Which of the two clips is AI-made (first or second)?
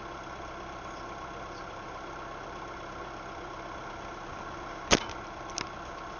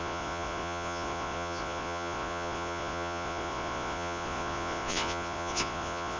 second